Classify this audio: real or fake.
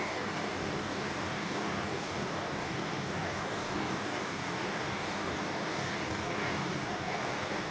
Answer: fake